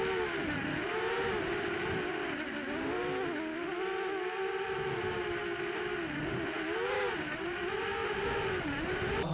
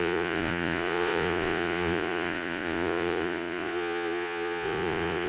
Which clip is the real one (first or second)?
first